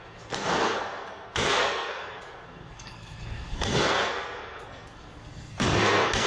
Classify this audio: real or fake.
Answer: fake